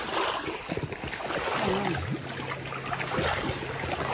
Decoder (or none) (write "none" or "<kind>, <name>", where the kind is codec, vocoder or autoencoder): none